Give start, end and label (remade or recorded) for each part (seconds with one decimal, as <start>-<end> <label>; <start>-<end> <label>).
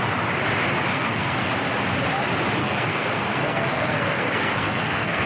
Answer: 0.0-0.9 recorded; 0.9-1.5 remade; 1.5-2.6 recorded; 2.6-5.3 remade